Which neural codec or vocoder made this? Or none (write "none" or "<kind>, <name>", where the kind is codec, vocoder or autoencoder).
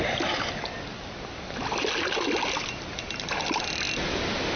none